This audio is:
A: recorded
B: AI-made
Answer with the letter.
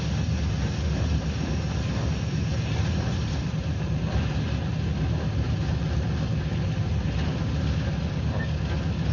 A